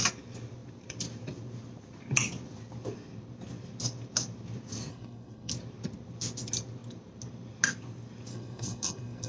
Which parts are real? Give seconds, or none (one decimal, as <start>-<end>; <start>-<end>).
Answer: 0.0-4.9; 5.5-8.3